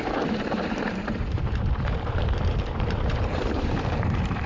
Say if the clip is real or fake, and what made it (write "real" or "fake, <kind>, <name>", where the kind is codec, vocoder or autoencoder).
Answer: fake, vocoder, BigVGAN v2